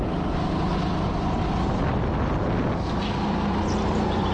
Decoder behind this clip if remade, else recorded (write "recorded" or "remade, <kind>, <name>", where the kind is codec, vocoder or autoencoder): recorded